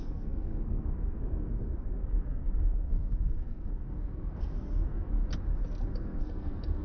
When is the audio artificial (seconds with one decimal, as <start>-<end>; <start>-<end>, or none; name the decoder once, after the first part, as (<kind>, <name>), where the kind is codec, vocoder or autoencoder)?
0.0-5.2 (codec, SNAC); 5.9-6.8